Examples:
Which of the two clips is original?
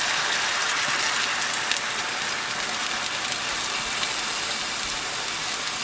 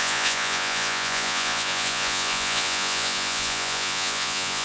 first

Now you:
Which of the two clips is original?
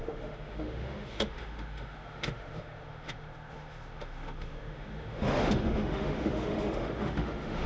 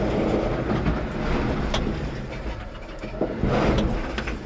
second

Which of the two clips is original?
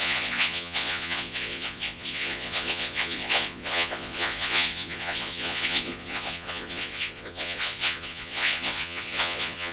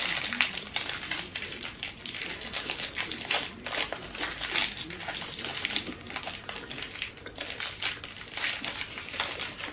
second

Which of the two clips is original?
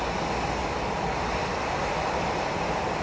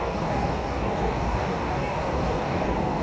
first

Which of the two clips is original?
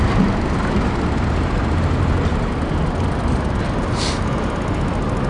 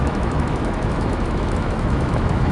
first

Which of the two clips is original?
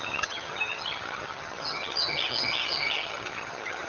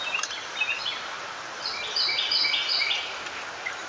second